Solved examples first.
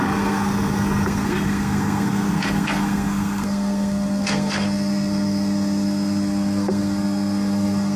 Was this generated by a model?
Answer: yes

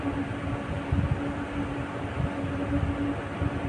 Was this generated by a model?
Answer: no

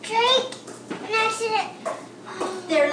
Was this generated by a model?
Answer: no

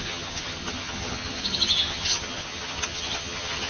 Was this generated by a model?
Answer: yes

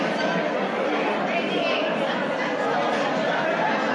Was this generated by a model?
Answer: no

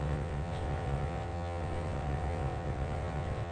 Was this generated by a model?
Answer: yes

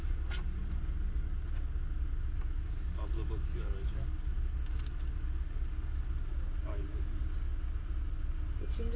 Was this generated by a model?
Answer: no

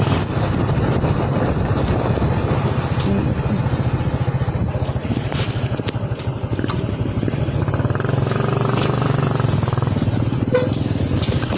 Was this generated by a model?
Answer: no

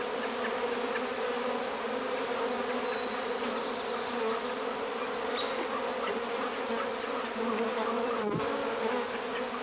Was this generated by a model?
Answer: no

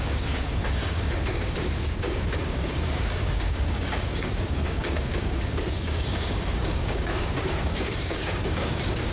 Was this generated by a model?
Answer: yes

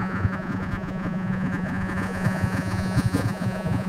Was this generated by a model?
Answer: yes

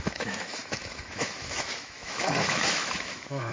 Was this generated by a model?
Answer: yes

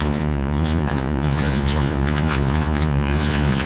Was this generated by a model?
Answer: yes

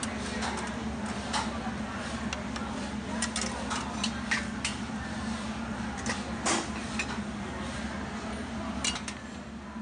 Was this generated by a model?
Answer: no